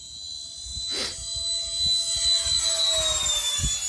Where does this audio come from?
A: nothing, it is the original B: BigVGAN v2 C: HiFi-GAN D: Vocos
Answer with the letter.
A